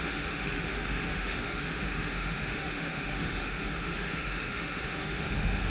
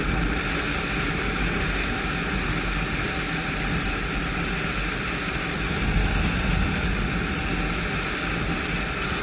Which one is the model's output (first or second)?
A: first